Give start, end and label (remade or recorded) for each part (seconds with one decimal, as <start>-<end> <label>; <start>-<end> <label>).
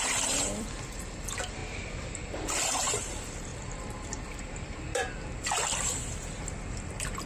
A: 0.0-7.3 remade